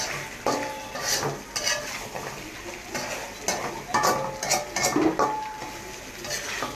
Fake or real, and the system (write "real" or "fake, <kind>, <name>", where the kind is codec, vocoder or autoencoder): real